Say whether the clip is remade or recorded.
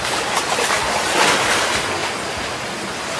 recorded